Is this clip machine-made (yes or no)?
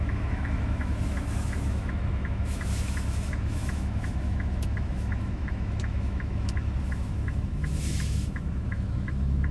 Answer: yes